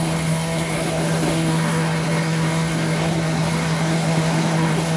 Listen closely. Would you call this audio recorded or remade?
remade